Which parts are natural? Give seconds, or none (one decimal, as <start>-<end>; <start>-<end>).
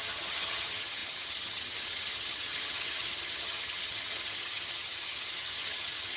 none